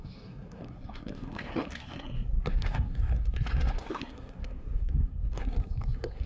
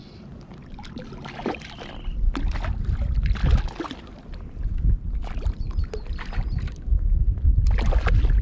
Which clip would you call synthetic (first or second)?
first